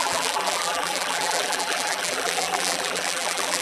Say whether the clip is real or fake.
fake